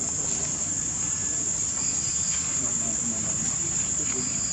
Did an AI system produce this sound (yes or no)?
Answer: no